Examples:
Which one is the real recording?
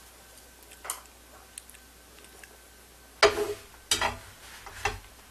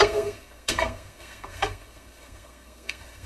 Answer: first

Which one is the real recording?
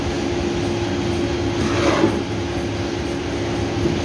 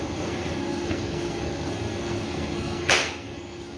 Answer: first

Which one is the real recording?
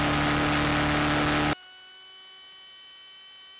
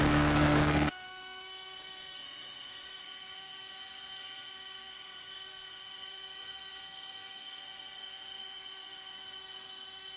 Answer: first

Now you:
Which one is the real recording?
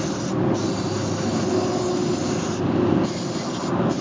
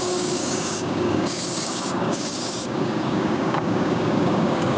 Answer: first